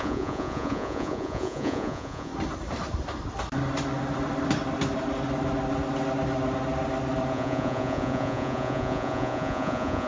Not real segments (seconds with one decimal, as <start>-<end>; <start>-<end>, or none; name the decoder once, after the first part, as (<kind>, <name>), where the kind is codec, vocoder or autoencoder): 0.0-2.3 (vocoder, Vocos); 7.3-10.1